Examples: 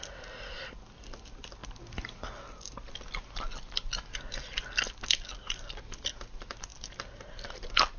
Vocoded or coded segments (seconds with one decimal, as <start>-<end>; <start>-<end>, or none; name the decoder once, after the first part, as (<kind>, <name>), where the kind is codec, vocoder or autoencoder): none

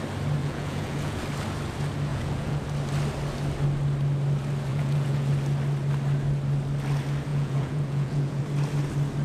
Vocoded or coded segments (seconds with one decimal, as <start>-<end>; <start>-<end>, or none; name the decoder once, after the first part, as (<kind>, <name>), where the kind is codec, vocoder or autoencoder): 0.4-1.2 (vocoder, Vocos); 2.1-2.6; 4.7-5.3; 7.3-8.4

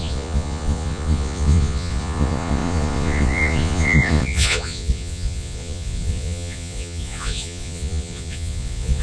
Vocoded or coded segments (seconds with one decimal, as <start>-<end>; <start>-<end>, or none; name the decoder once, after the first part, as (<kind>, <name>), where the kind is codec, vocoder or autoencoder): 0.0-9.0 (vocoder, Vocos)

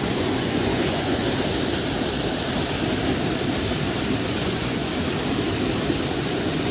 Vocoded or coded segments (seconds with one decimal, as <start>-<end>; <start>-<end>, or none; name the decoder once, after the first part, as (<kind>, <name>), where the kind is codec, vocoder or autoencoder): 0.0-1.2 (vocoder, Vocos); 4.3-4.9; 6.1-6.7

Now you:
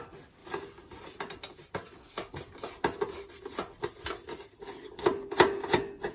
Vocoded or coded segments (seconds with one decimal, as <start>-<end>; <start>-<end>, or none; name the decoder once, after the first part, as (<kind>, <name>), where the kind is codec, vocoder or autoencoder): none

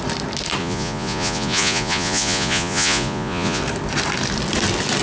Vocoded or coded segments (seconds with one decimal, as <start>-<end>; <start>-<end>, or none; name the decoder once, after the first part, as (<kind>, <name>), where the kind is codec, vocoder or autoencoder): 0.6-3.6 (vocoder, Vocos)